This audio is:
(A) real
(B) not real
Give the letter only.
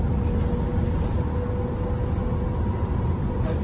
A